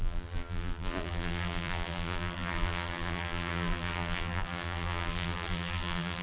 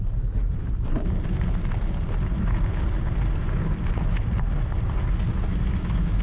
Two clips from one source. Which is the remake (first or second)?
first